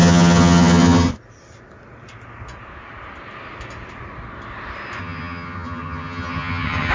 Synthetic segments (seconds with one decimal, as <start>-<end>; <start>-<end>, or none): 0.0-1.1; 5.0-6.9